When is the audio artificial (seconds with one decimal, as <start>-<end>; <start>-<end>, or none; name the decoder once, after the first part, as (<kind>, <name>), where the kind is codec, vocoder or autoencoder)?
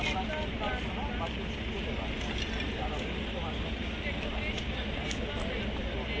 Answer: none